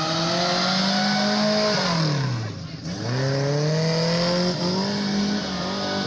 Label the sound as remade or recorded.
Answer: recorded